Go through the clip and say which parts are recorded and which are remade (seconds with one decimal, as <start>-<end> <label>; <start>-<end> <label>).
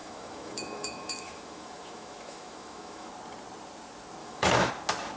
0.0-3.1 remade; 3.1-4.2 recorded; 4.2-4.7 remade; 4.7-5.2 recorded